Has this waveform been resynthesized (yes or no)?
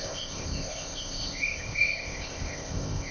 yes